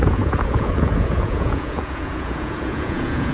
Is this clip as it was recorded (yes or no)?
no